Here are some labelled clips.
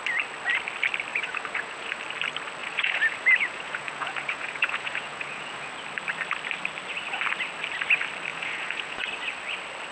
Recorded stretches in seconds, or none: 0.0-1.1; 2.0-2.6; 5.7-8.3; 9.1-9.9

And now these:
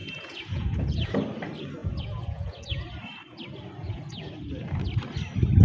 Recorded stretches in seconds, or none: 1.1-1.8; 2.8-3.8; 4.3-5.6

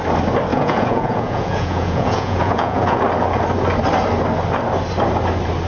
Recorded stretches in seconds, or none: 0.0-0.5; 3.0-5.7

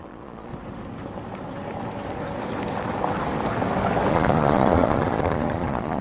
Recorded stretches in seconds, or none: 0.5-4.1

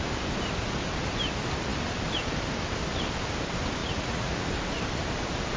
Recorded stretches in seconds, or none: 0.0-3.8; 4.3-5.6